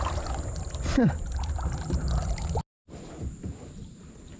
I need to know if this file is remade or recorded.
recorded